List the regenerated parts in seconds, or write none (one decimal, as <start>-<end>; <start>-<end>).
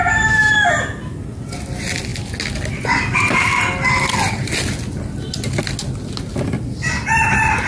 0.0-0.7